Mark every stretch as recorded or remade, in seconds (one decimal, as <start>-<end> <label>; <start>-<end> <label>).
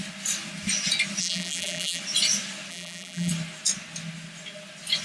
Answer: 0.0-1.2 recorded; 1.2-2.0 remade; 2.0-2.7 recorded; 2.7-3.3 remade; 3.3-5.0 recorded